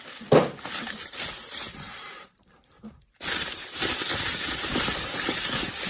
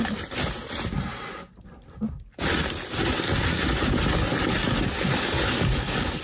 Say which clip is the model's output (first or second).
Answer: first